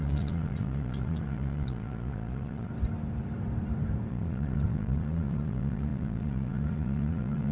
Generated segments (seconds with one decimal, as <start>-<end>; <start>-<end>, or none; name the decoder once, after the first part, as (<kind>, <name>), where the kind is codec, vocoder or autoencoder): 0.0-2.7 (vocoder, Vocos); 4.1-7.5

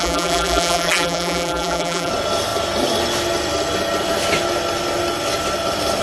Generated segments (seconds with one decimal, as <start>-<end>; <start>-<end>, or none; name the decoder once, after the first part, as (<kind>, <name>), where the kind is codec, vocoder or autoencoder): 0.0-2.1 (vocoder, BigVGAN v2)

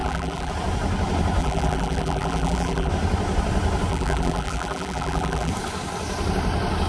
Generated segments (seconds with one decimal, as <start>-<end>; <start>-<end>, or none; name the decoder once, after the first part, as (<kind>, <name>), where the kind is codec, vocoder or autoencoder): 0.0-0.5 (vocoder, BigVGAN v2); 1.4-2.9; 3.9-5.5

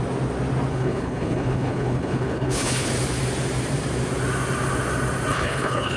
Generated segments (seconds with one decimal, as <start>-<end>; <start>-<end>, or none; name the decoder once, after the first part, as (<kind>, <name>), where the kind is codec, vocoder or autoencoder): 0.7-2.9 (codec, HILCodec); 5.3-6.0

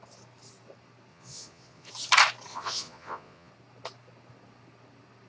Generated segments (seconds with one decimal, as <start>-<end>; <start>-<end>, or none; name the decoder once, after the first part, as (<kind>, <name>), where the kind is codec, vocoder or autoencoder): 1.1-1.9 (vocoder, Vocos); 2.5-3.5

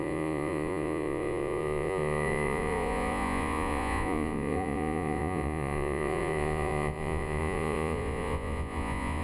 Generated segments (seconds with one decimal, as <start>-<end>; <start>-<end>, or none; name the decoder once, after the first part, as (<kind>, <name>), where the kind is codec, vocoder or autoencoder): 0.0-9.2 (vocoder, Vocos)

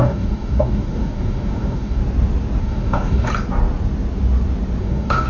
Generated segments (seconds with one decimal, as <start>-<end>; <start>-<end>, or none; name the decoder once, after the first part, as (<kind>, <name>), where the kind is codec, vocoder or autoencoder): 0.0-2.0 (codec, DAC); 2.6-3.3; 4.8-5.3

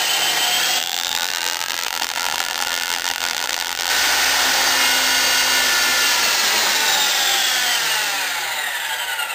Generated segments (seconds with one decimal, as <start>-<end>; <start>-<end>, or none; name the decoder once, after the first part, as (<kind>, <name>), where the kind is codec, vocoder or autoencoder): 0.8-3.9 (vocoder, BigVGAN v2)